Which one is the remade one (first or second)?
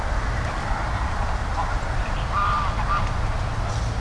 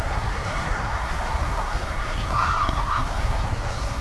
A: second